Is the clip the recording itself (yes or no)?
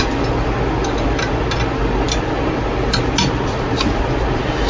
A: yes